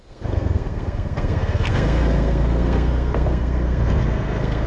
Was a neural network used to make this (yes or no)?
yes